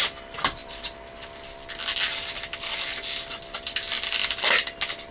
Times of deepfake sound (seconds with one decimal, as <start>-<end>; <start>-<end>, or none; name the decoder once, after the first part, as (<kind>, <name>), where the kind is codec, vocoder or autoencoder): none